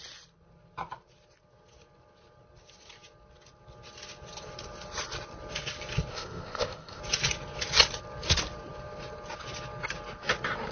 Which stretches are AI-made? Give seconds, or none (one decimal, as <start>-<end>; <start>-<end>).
6.1-7.0